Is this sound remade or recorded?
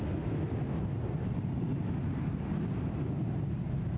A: recorded